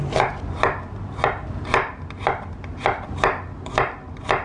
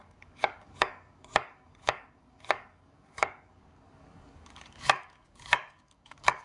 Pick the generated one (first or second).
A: second